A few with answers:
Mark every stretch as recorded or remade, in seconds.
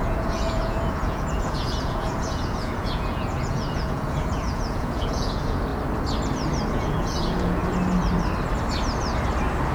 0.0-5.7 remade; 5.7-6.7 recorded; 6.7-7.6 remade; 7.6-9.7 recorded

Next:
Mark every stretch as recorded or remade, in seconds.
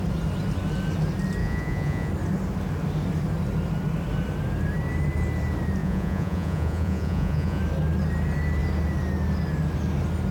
0.0-1.4 recorded; 1.4-2.1 remade; 2.1-5.8 recorded; 5.8-7.6 remade; 7.6-10.3 recorded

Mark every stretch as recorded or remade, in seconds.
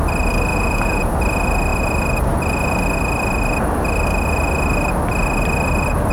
0.0-0.5 recorded; 0.5-1.1 remade; 1.1-6.1 recorded